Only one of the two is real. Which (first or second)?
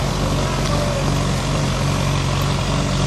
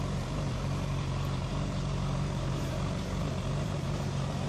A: first